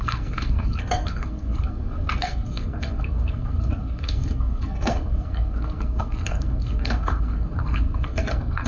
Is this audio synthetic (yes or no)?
yes